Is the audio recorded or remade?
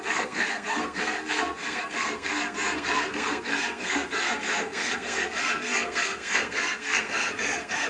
remade